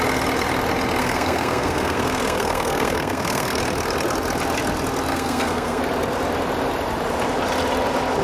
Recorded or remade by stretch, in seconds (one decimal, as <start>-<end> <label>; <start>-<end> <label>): 0.0-1.0 recorded; 1.0-3.6 remade; 3.6-5.1 recorded; 5.1-5.8 remade; 5.8-8.2 recorded